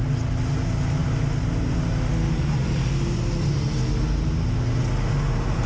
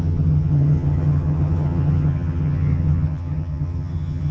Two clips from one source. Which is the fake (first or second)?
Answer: second